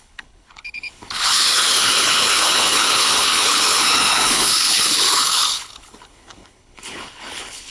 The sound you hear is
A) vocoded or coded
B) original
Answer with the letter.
A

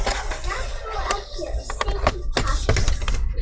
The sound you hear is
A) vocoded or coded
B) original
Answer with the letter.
B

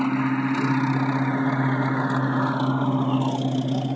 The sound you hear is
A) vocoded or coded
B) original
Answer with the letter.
B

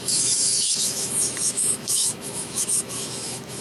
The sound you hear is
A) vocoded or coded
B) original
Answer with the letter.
A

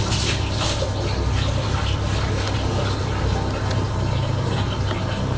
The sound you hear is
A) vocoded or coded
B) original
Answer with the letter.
B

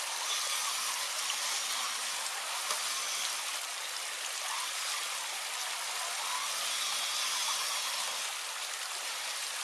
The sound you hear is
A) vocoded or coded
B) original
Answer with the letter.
B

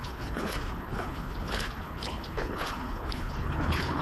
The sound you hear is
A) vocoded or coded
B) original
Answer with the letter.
A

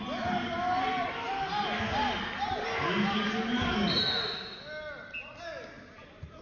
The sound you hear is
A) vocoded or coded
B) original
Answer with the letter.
B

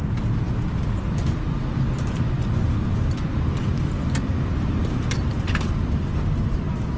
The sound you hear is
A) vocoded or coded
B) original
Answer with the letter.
B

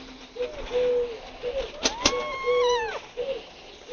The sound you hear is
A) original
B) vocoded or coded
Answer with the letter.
A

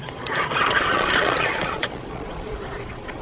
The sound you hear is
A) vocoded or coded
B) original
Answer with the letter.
A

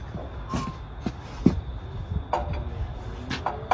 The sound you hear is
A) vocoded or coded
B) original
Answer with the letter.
B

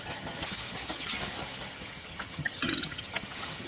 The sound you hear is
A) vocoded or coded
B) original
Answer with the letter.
A